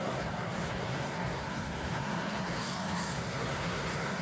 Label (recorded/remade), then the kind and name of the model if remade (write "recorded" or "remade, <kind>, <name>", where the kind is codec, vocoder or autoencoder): remade, codec, SNAC